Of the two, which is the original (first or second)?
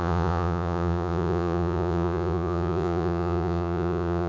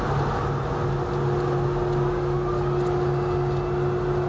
second